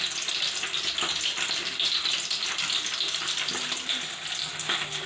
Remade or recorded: recorded